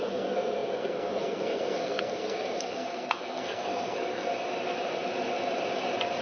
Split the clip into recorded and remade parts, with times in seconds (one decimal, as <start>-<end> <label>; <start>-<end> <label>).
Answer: 0.0-4.3 remade; 4.3-6.2 recorded